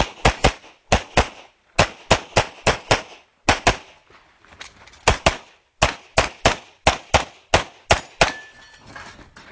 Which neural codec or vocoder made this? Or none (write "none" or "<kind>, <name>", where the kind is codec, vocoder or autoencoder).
none